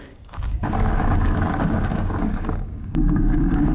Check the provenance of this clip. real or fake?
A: fake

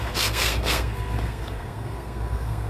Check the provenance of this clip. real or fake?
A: fake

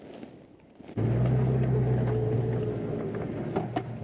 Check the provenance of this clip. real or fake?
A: real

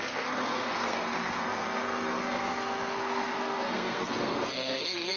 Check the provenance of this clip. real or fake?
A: fake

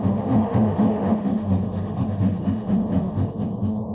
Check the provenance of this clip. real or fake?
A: fake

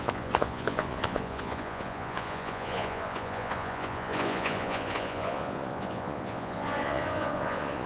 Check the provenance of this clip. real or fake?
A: fake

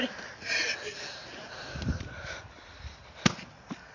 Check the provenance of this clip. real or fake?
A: real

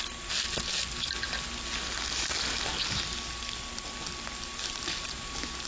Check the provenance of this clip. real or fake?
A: real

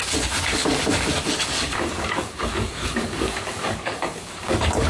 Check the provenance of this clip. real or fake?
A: fake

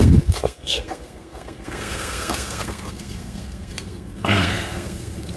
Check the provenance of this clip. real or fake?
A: fake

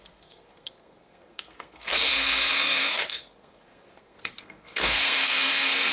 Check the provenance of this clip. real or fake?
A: fake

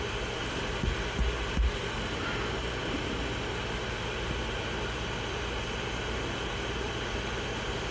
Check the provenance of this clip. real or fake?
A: real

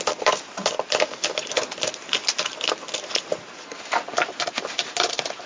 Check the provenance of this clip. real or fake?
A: real